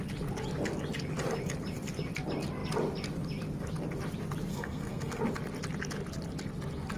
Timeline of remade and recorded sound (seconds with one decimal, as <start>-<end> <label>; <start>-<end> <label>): 0.0-4.5 recorded; 4.5-5.2 remade; 5.2-7.0 recorded